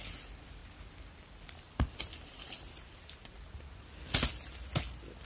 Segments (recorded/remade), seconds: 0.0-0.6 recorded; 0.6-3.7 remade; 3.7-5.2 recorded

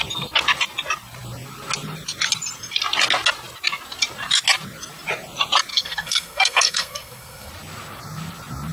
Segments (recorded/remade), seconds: 0.0-5.7 recorded; 5.7-7.5 remade; 7.5-8.7 recorded

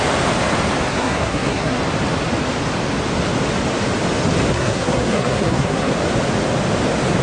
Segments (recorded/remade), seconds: 0.0-0.9 recorded; 0.9-1.8 remade; 1.8-4.5 recorded; 4.5-5.9 remade; 5.9-7.2 recorded

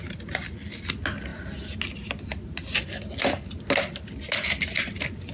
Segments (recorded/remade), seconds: 0.0-5.3 recorded

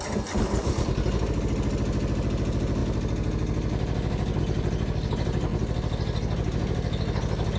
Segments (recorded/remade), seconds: 0.0-7.6 recorded